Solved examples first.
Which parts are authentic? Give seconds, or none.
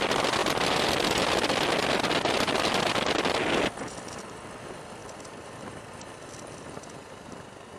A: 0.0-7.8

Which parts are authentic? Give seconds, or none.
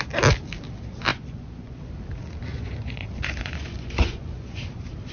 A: 0.0-1.1; 1.8-2.5; 4.6-5.1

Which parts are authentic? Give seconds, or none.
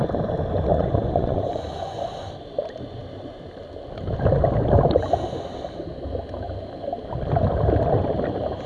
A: 0.0-0.7; 2.2-8.7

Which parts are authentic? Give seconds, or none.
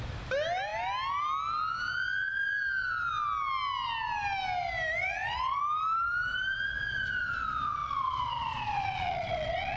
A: 0.0-5.0; 5.6-7.8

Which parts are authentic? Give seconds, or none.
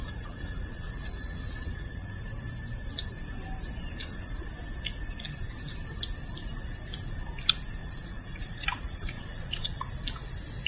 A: 2.2-4.0; 4.5-7.8; 9.8-10.7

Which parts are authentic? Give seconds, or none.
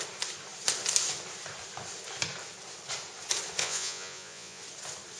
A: 0.0-3.6; 4.6-5.2